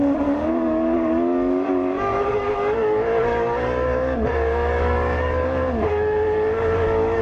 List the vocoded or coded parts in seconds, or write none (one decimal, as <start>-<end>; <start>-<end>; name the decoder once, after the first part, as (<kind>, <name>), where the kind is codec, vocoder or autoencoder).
0.0-7.2 (codec, DAC)